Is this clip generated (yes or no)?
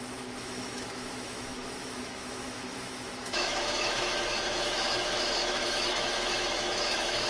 yes